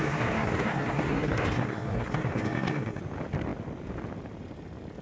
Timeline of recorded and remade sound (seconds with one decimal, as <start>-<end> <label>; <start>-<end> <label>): 0.0-3.0 remade; 3.0-5.0 recorded